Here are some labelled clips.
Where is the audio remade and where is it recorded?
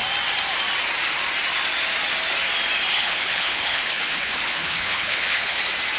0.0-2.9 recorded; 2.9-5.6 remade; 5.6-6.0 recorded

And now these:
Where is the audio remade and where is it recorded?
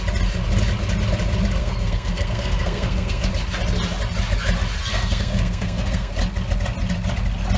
0.0-1.6 recorded; 1.6-3.3 remade; 3.3-4.8 recorded; 4.8-6.1 remade; 6.1-7.6 recorded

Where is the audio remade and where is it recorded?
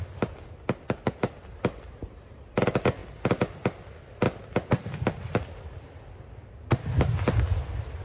0.0-8.0 recorded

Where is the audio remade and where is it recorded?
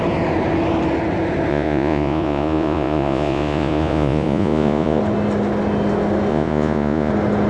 0.0-1.5 recorded; 1.5-5.0 remade; 5.0-6.3 recorded; 6.3-7.1 remade; 7.1-7.5 recorded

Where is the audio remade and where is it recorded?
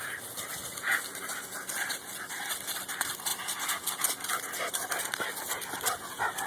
0.0-6.5 recorded